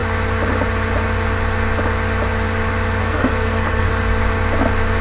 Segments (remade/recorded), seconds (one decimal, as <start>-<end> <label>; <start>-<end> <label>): 0.0-3.0 recorded; 3.0-3.9 remade; 3.9-5.0 recorded